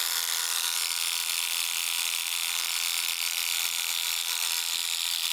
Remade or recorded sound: remade